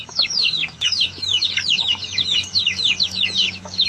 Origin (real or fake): fake